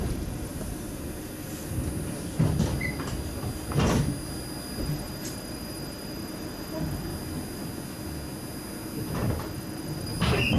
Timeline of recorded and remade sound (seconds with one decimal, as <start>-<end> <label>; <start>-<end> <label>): 0.0-0.5 remade; 0.5-4.8 recorded; 4.8-7.1 remade; 7.1-9.4 recorded; 9.4-10.1 remade; 10.1-10.6 recorded